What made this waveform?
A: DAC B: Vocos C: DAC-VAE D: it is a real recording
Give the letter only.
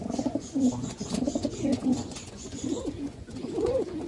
B